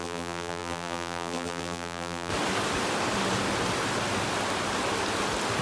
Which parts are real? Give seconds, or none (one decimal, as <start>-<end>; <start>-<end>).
2.3-5.6